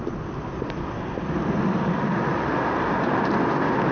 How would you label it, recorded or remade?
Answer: recorded